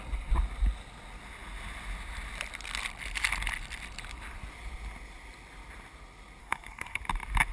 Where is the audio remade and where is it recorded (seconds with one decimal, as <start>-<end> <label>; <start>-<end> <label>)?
0.0-6.4 recorded; 6.4-7.0 remade; 7.0-7.5 recorded